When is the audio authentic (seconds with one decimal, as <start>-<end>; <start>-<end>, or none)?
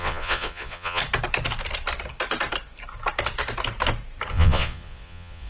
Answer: 1.0-4.3